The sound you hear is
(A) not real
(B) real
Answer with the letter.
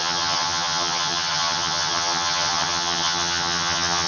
A